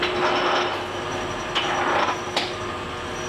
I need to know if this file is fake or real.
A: real